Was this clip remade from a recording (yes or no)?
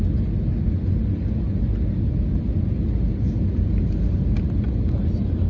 no